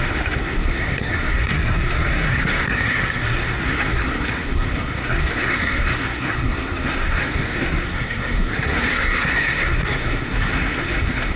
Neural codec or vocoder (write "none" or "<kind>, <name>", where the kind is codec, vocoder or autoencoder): codec, SNAC